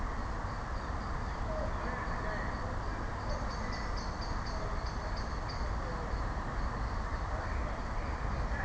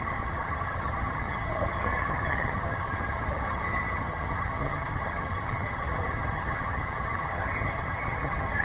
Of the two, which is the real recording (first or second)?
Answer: first